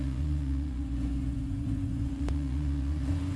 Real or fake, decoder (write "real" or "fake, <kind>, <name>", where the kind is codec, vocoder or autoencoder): fake, vocoder, Vocos